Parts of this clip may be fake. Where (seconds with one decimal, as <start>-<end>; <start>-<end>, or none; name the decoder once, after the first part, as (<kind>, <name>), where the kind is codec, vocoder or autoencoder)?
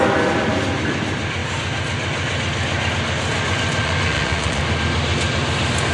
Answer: 3.3-4.6 (vocoder, Vocos)